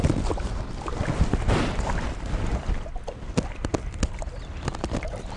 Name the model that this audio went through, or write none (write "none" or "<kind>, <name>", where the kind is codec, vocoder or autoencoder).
none